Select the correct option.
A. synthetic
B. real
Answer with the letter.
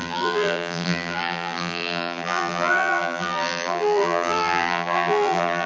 A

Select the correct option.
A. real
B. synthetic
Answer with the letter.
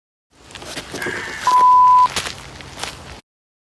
A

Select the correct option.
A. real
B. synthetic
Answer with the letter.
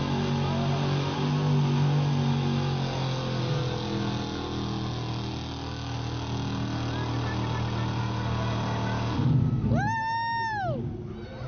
A